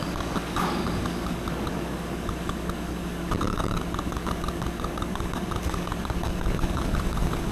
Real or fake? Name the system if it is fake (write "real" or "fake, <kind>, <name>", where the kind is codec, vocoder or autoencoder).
fake, codec, DAC